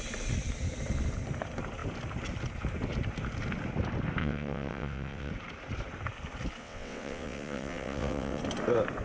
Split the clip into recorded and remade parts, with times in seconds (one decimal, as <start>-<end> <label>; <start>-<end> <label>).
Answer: 0.0-4.2 recorded; 4.2-5.3 remade; 5.3-6.6 recorded; 6.6-8.4 remade; 8.4-9.0 recorded